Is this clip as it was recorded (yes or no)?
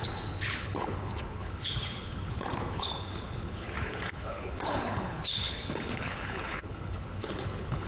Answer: no